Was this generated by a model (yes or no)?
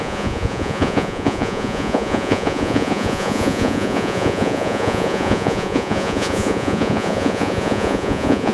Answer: yes